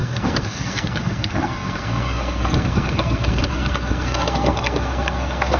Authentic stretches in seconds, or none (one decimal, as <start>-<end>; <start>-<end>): none